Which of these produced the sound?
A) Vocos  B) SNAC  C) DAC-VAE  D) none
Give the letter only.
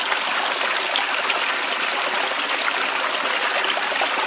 D